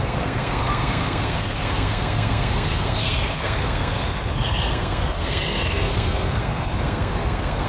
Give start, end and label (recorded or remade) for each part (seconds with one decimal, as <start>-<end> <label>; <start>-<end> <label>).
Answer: 0.0-7.7 remade